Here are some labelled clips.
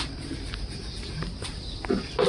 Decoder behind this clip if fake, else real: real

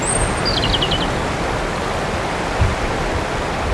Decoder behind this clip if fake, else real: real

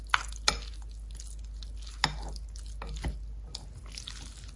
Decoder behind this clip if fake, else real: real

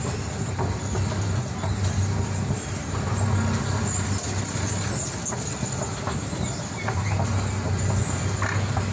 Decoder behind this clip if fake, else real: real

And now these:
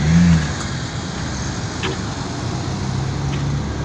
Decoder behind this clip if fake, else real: real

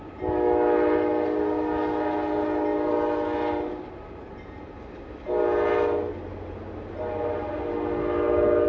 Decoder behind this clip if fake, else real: real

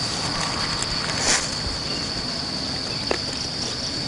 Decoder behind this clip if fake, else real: real